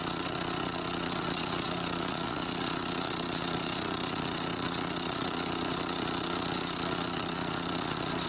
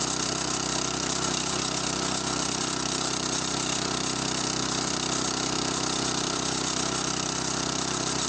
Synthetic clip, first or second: first